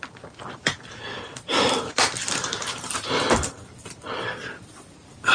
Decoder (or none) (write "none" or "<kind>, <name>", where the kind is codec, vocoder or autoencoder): vocoder, BigVGAN v2